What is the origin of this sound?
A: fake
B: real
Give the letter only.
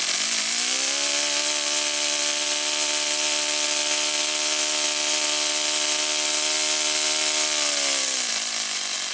B